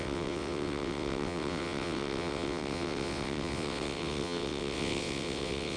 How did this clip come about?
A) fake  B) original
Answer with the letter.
A